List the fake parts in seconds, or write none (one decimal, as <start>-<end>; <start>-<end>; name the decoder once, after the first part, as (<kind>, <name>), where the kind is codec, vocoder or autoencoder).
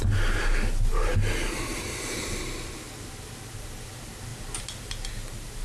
none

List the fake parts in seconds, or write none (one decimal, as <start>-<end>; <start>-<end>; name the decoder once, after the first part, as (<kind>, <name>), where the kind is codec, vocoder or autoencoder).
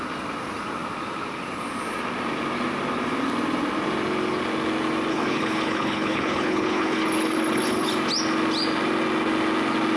5.1-7.9 (codec, HILCodec)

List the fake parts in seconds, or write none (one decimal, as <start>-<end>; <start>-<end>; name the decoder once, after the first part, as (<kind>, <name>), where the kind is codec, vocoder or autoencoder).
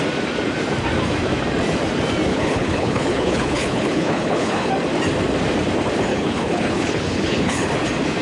2.3-4.7 (codec, HILCodec); 6.1-7.7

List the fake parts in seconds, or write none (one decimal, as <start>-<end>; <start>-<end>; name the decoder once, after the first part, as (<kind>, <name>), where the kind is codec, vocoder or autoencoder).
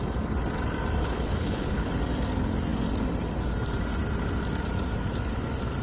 1.0-1.9 (codec, HILCodec)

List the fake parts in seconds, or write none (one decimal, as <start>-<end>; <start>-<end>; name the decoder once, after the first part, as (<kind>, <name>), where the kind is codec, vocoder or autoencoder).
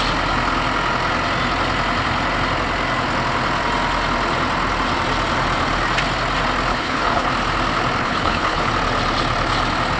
6.7-7.3 (codec, HILCodec); 8.0-8.7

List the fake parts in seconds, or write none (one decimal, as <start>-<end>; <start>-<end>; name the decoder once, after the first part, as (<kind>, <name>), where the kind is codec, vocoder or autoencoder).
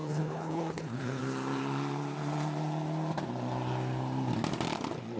0.0-1.2 (codec, HILCodec)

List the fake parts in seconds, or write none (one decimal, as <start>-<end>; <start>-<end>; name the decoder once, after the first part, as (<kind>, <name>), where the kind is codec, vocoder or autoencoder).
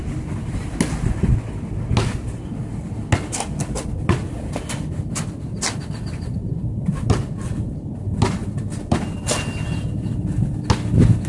none